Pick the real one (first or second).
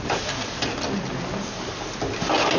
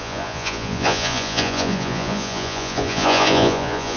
first